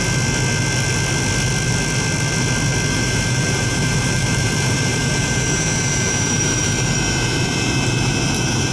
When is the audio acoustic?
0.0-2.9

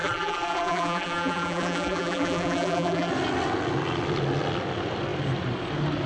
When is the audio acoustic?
3.1-6.1

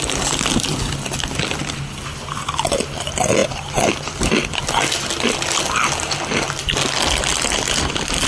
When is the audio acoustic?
0.0-7.3; 7.9-8.3